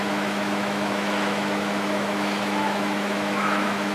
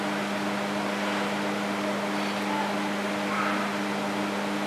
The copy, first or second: first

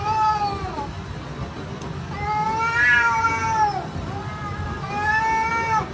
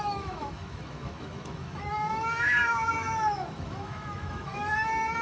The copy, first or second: second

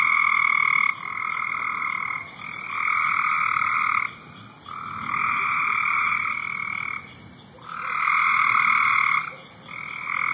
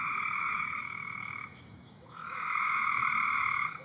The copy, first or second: second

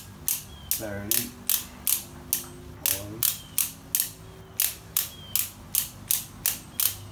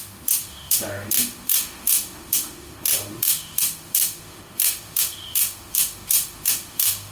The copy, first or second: second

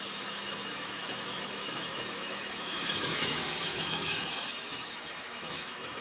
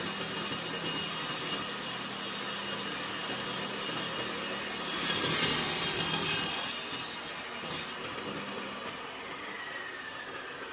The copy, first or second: first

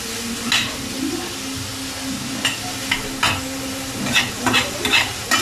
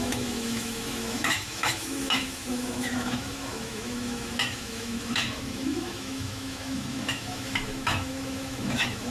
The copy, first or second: second